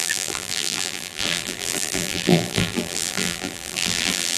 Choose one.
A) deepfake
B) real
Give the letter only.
A